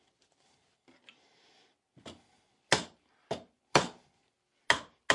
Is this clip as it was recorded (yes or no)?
yes